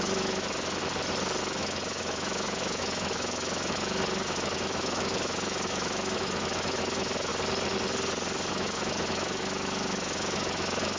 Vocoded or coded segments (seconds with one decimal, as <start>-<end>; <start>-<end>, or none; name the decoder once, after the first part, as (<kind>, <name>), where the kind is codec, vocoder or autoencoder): 0.0-0.8 (autoencoder, DAC-VAE); 1.4-7.3; 8.5-11.0